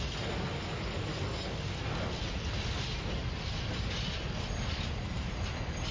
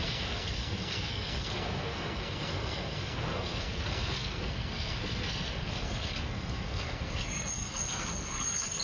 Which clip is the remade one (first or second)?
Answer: second